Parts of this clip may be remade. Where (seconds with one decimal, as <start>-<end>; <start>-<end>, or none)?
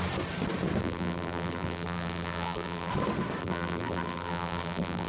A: 0.8-2.9; 3.4-5.1